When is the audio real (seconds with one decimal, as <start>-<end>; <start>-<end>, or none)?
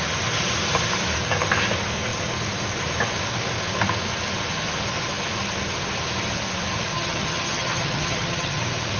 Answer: 0.0-6.9; 8.6-9.0